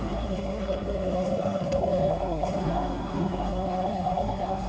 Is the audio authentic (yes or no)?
no